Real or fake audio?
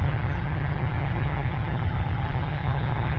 fake